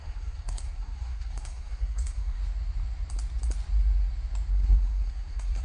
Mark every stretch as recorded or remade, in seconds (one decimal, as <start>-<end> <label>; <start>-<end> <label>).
0.0-2.4 remade; 2.4-4.5 recorded; 4.5-5.6 remade